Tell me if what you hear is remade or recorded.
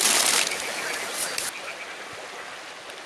recorded